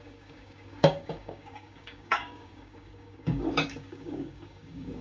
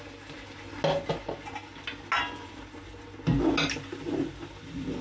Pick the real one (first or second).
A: second